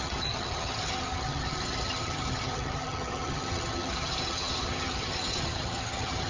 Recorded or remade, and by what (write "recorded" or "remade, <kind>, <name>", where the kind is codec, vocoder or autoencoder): remade, vocoder, HiFi-GAN